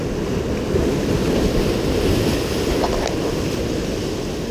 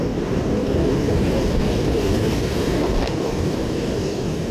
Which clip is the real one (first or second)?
first